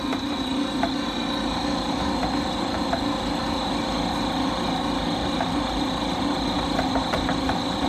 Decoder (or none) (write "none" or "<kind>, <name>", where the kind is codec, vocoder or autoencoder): none